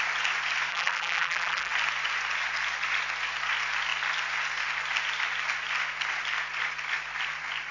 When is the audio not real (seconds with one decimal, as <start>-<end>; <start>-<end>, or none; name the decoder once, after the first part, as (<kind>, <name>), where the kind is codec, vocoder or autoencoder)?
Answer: 0.7-1.7 (vocoder, BigVGAN v2)